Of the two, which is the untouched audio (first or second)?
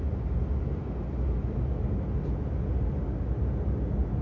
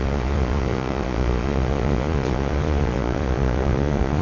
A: first